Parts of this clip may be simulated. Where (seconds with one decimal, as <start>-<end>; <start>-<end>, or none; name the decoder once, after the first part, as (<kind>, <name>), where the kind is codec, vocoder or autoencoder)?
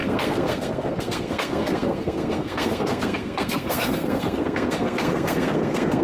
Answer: 0.0-6.0 (codec, SNAC)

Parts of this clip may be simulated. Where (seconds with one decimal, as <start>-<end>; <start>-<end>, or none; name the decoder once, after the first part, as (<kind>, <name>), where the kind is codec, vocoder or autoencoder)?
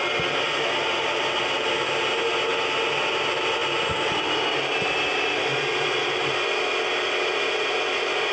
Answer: none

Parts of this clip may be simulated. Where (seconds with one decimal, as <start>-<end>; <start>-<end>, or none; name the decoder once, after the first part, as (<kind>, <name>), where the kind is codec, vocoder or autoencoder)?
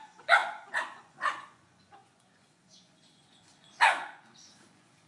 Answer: 0.0-5.1 (vocoder, Vocos)